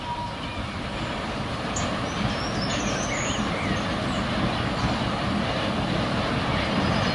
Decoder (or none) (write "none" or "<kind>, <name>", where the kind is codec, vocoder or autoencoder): none